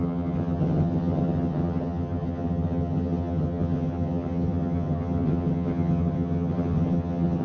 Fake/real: fake